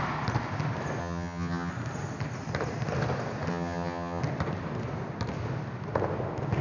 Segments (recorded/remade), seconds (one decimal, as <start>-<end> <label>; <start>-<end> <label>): 0.0-1.0 recorded; 1.0-1.7 remade; 1.7-3.5 recorded; 3.5-4.2 remade; 4.2-6.6 recorded